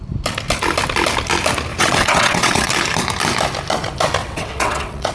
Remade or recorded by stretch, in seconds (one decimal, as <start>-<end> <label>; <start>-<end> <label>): 0.0-1.7 recorded; 1.7-2.7 remade; 2.7-4.2 recorded; 4.2-5.1 remade